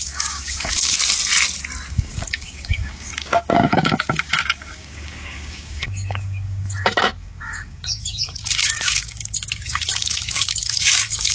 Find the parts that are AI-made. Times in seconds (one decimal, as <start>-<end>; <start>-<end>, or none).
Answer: 0.0-1.0; 1.9-11.3